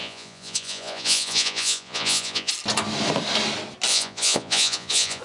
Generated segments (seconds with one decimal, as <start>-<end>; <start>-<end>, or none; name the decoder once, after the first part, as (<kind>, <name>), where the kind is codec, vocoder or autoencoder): 0.0-2.5 (vocoder, Vocos); 3.9-5.2